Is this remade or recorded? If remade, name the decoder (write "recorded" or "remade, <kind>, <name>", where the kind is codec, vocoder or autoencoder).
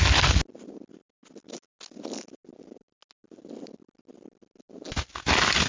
recorded